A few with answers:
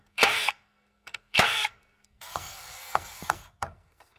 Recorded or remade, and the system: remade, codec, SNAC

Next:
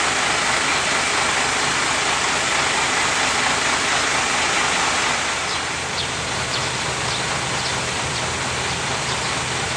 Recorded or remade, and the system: recorded